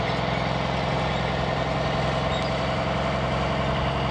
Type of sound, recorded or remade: recorded